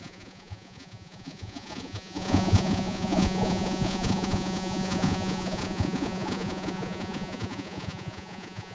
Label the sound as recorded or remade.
remade